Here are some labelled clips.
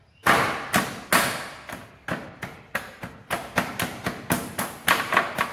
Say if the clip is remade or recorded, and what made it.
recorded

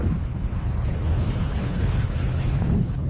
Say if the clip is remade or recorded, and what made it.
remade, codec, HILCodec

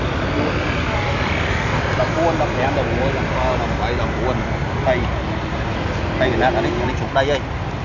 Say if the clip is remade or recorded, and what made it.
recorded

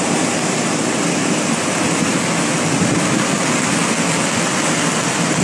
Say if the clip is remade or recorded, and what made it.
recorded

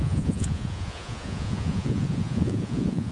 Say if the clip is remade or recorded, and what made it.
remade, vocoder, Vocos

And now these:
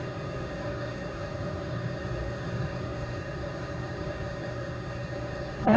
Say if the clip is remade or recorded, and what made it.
remade, codec, SNAC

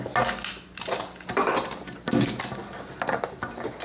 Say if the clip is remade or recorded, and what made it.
recorded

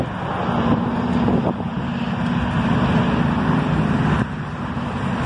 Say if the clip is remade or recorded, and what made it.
recorded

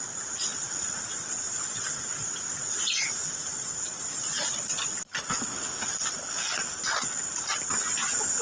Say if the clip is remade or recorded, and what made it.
recorded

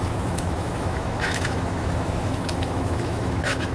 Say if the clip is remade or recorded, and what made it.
remade, autoencoder, DAC-VAE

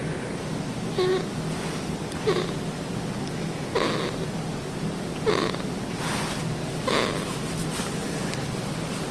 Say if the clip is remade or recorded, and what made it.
recorded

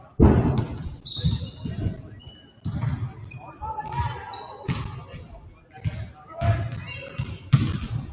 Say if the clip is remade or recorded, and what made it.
recorded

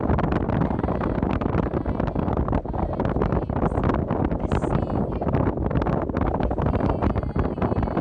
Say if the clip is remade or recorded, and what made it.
recorded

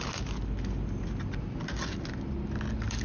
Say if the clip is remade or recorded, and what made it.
recorded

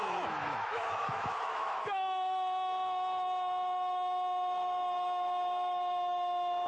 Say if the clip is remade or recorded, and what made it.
remade, autoencoder, DAC-VAE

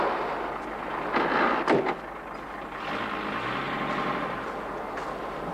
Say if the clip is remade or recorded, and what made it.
recorded